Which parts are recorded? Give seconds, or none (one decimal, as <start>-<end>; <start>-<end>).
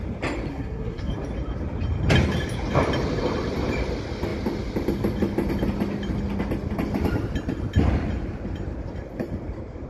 0.0-0.5; 1.1-9.9